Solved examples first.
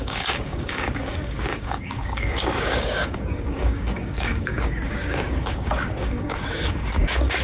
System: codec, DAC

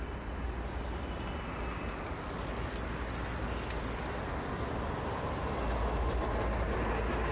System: none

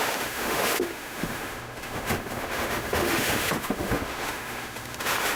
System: autoencoder, DAC-VAE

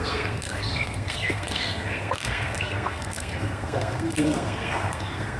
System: codec, SNAC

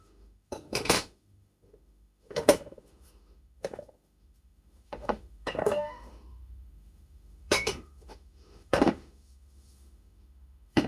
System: autoencoder, DAC-VAE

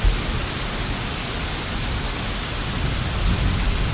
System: none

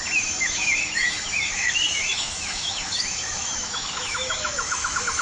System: autoencoder, DAC-VAE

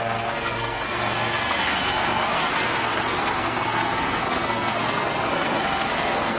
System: codec, SNAC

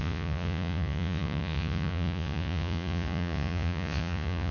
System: vocoder, Vocos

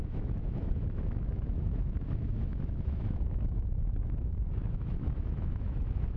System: autoencoder, DAC-VAE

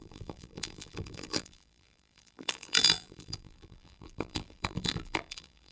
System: vocoder, BigVGAN v2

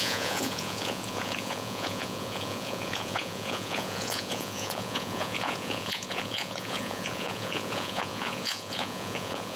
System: vocoder, Vocos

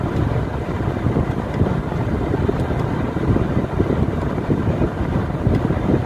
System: none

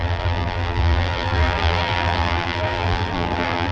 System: vocoder, BigVGAN v2